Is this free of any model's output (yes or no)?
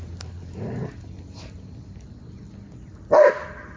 yes